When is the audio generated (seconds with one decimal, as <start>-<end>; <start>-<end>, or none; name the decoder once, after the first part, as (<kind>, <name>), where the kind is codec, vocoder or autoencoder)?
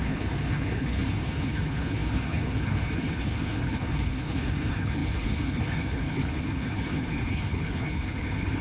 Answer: 0.0-8.6 (codec, HILCodec)